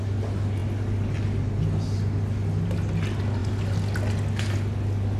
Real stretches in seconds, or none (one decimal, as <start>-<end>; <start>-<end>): 0.0-5.2